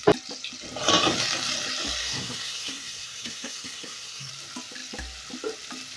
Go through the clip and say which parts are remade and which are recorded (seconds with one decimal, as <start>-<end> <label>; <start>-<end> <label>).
0.0-2.0 recorded; 2.0-4.3 remade; 4.3-6.0 recorded